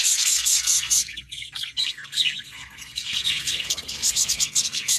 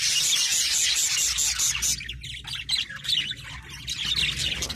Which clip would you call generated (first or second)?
first